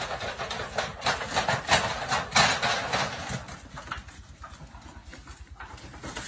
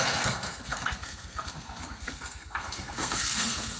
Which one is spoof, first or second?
second